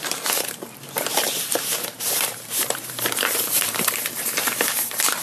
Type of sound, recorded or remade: remade